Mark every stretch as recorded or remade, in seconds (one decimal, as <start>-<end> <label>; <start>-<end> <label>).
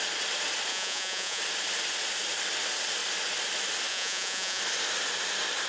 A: 0.0-0.7 recorded; 0.7-1.4 remade; 1.4-3.9 recorded; 3.9-4.6 remade; 4.6-5.7 recorded